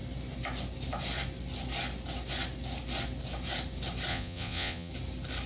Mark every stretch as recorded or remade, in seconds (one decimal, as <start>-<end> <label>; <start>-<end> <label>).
0.0-4.1 recorded; 4.1-4.9 remade; 4.9-5.5 recorded